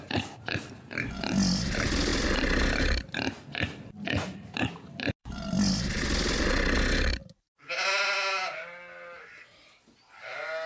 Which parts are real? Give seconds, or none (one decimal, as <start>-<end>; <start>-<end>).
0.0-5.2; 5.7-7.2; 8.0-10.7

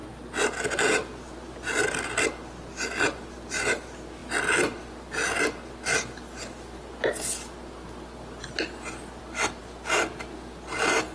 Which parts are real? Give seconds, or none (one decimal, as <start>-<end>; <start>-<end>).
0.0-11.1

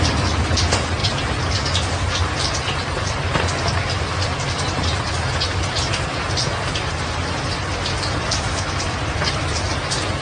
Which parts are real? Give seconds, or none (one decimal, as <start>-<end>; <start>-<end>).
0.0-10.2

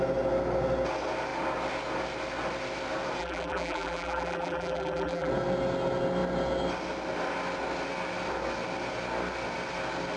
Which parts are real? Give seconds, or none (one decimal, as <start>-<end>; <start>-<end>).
0.0-3.2; 5.3-10.2

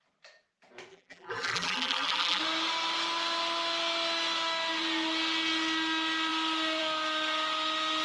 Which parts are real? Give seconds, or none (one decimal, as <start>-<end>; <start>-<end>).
0.0-0.9; 2.4-8.0